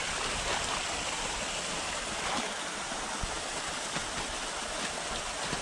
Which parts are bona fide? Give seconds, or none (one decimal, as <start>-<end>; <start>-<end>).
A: 0.0-5.6